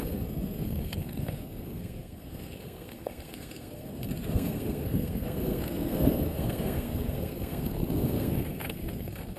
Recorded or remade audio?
remade